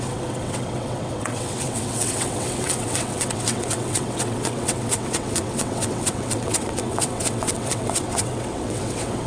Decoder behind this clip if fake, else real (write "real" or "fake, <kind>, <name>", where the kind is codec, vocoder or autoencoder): fake, vocoder, WaveNeXt